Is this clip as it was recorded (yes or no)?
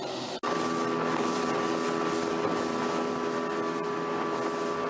yes